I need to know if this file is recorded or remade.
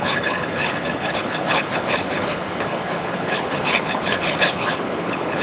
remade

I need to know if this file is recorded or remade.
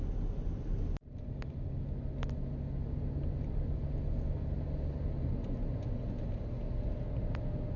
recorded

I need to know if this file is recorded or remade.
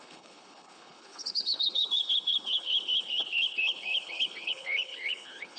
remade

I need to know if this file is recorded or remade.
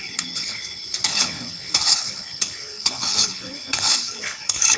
remade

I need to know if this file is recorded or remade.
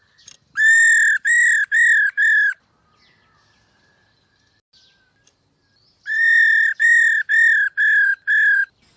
recorded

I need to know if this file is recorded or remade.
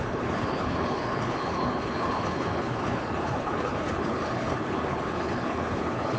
remade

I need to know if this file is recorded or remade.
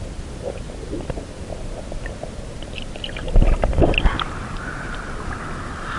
recorded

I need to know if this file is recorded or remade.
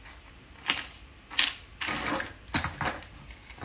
recorded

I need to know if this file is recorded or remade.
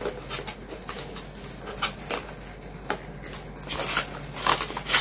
recorded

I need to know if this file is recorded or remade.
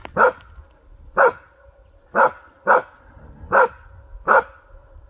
recorded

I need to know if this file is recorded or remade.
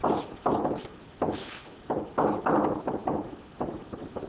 recorded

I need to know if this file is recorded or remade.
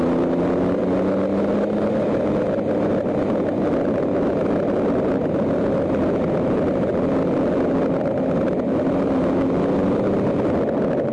recorded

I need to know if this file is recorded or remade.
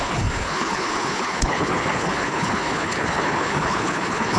remade